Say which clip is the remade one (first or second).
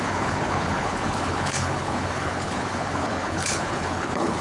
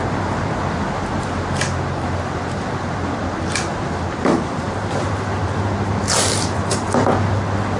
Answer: first